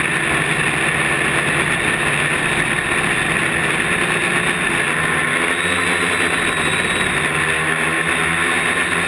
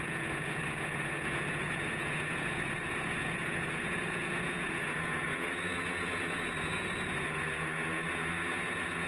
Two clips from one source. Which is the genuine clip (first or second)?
first